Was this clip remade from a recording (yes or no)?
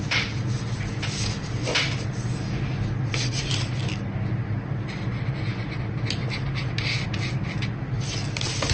no